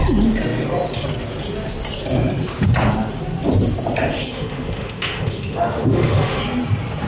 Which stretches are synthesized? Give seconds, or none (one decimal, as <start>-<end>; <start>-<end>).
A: 4.3-6.4